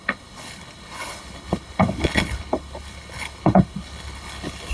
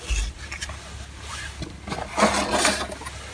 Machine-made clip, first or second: first